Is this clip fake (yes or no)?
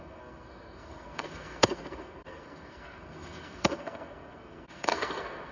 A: yes